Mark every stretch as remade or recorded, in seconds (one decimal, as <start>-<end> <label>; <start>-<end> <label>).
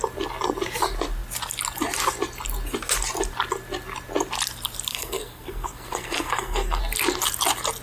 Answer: 0.0-4.9 recorded; 4.9-6.8 remade; 6.8-7.8 recorded